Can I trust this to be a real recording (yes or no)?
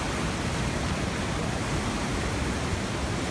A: yes